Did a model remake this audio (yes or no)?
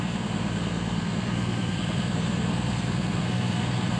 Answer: yes